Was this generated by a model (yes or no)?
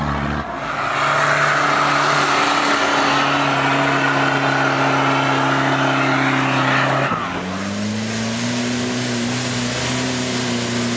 no